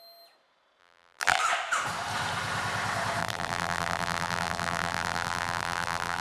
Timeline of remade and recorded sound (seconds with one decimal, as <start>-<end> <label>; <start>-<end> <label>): 0.0-0.8 recorded; 0.8-1.4 remade; 1.4-3.2 recorded; 3.2-6.2 remade